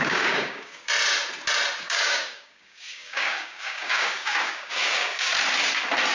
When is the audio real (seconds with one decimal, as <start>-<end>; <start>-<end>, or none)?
0.9-1.8; 5.3-6.1